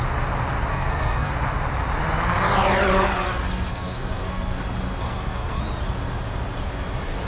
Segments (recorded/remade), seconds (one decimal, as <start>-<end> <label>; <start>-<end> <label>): 0.0-0.7 recorded; 0.7-1.3 remade; 1.3-3.7 recorded; 3.7-4.6 remade; 4.6-5.0 recorded; 5.0-5.6 remade; 5.6-7.3 recorded